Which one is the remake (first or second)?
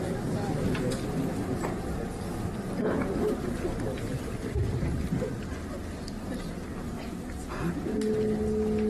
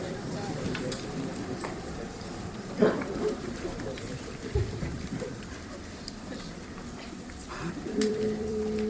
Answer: second